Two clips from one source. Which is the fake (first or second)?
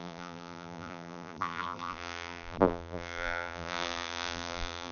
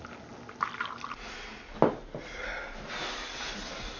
first